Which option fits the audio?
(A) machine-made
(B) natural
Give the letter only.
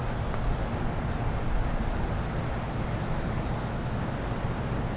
B